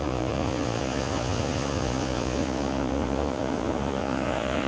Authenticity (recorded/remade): remade